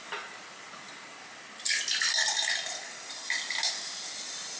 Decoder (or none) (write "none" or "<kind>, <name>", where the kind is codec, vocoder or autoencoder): none